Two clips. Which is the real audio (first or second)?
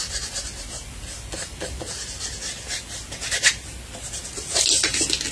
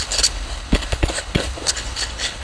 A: first